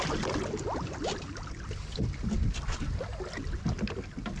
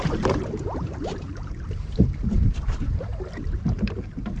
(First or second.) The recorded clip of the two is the first